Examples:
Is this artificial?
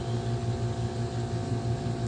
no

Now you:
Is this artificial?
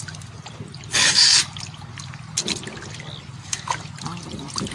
no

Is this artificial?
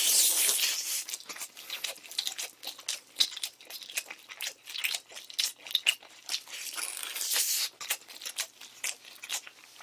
no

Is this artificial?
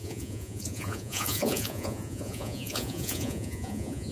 yes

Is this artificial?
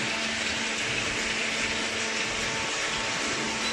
no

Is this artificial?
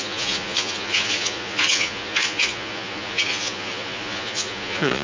yes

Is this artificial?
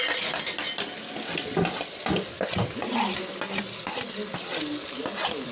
no